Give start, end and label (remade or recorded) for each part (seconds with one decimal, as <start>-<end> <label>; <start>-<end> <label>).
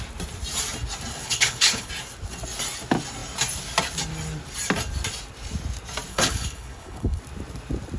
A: 0.0-1.1 recorded; 1.1-1.9 remade; 1.9-6.1 recorded; 6.1-7.2 remade; 7.2-8.0 recorded